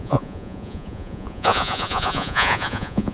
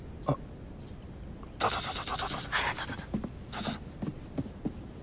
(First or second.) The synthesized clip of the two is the first